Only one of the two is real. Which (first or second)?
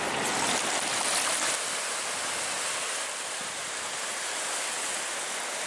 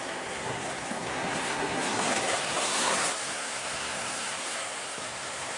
first